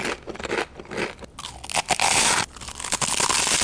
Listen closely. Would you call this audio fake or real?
real